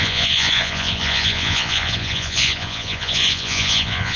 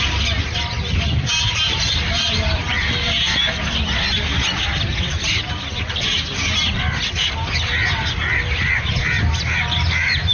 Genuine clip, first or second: second